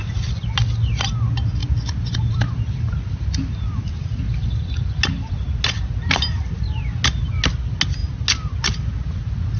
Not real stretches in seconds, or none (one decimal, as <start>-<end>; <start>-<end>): none